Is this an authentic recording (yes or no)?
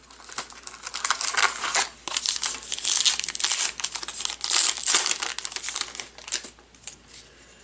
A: yes